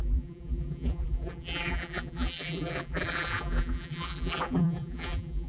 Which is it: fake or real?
fake